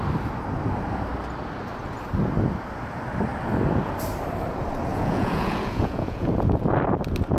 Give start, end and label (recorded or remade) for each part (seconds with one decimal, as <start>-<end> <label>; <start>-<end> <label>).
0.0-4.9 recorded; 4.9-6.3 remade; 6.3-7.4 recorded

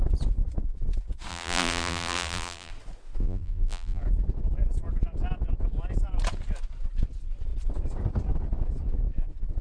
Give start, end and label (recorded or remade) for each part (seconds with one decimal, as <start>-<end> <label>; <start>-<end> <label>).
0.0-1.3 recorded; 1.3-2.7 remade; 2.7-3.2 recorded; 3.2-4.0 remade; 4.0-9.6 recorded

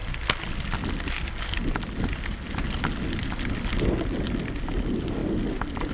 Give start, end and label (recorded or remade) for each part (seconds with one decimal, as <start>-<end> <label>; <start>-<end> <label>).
0.0-5.9 recorded

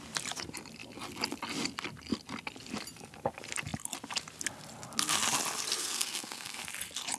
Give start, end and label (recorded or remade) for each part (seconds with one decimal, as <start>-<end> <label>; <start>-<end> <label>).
0.0-5.8 recorded; 5.8-6.6 remade; 6.6-7.2 recorded

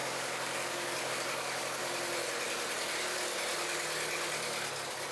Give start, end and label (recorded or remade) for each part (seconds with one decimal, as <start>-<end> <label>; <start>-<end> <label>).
0.0-1.8 remade; 1.8-5.1 recorded

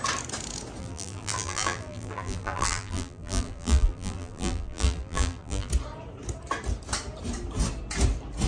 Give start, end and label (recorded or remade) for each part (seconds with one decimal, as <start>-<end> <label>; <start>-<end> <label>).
0.0-0.8 recorded; 0.8-5.7 remade; 5.7-8.5 recorded

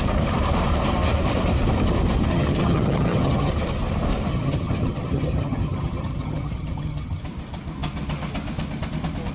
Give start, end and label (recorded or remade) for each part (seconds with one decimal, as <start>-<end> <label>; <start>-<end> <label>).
0.0-2.3 recorded; 2.3-3.5 remade; 3.5-4.3 recorded; 4.3-7.2 remade; 7.2-9.3 recorded